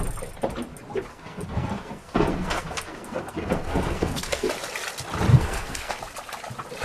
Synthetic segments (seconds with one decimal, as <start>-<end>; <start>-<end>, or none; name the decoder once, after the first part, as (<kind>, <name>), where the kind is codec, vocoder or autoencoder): 1.1-4.5 (codec, SNAC); 5.3-6.0